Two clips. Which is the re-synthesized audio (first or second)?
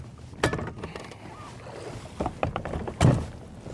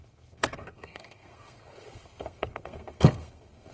second